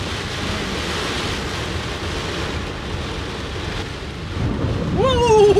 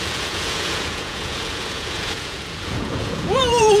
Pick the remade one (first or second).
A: second